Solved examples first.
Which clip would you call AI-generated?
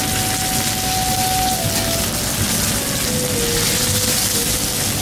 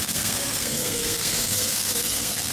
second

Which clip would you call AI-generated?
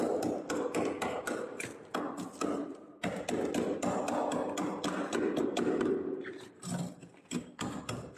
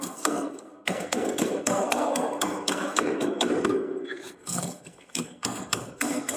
second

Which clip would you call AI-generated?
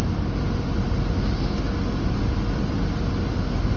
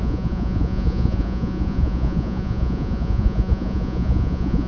second